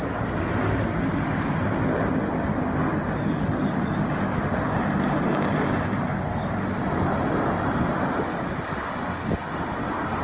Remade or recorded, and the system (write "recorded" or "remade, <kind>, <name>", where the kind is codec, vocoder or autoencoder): recorded